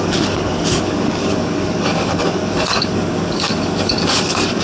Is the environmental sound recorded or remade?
remade